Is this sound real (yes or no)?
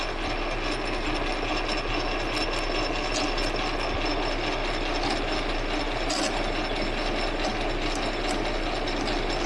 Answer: yes